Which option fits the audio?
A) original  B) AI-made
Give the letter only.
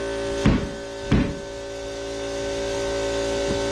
A